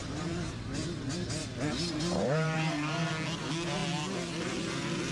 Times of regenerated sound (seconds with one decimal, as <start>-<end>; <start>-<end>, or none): 0.0-3.1